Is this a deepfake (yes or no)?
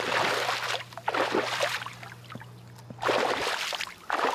no